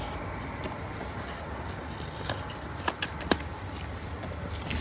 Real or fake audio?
real